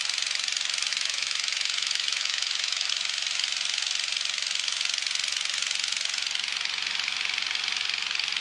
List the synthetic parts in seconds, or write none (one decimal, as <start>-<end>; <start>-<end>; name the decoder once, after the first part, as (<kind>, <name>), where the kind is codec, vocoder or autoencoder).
0.9-2.9 (autoencoder, DAC-VAE)